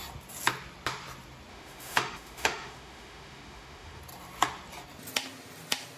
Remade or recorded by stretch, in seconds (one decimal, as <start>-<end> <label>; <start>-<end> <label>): 0.0-1.5 recorded; 1.5-4.0 remade; 4.0-6.0 recorded